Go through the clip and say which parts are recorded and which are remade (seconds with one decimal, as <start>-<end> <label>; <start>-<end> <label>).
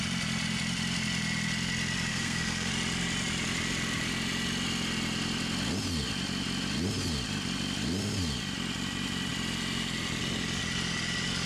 0.0-2.1 recorded; 2.1-2.7 remade; 2.7-11.5 recorded